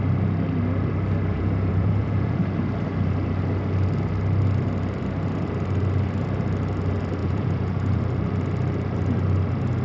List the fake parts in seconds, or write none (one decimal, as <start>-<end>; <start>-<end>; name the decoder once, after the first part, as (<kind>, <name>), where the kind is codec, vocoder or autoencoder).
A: 1.3-2.4 (vocoder, Vocos); 7.2-8.0